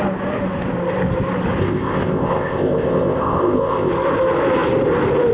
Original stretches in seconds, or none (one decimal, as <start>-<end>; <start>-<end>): 0.0-1.6; 3.9-5.3